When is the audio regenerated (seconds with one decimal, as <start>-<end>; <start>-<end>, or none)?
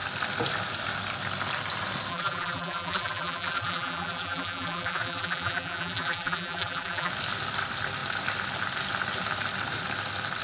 2.1-7.1